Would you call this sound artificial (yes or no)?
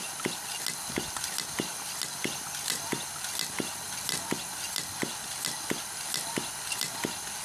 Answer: no